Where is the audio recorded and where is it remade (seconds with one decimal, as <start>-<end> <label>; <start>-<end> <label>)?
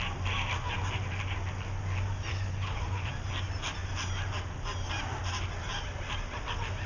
0.0-2.3 recorded; 2.3-3.1 remade; 3.1-6.9 recorded